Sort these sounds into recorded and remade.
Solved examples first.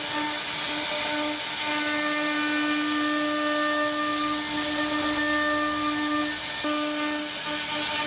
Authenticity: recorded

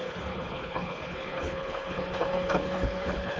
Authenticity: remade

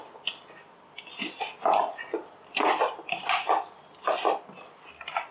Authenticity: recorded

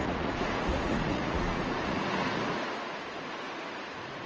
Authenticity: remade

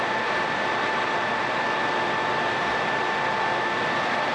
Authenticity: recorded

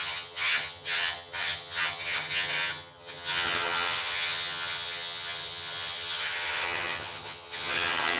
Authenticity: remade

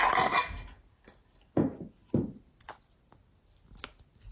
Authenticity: recorded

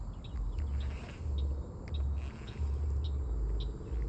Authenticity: recorded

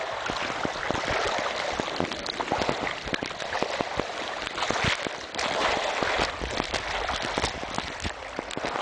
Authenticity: recorded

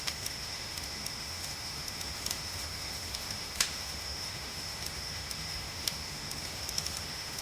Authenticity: remade